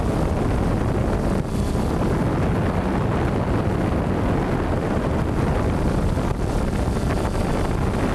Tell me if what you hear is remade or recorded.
recorded